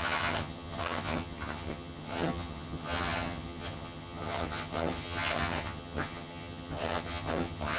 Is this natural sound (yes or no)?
no